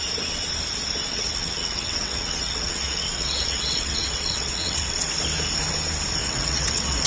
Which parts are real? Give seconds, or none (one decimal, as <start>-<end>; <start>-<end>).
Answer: 0.0-1.1; 5.1-6.2